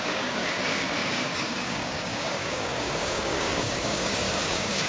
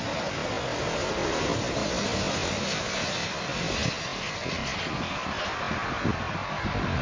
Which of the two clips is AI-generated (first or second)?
first